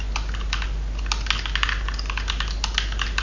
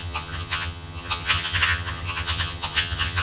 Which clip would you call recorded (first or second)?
first